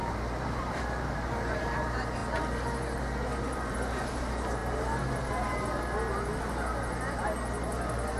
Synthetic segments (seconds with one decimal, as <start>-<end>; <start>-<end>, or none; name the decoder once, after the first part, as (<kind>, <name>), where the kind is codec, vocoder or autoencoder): 0.0-2.2 (vocoder, BigVGAN v2); 3.7-4.6